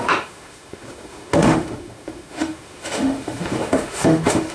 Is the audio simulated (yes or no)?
yes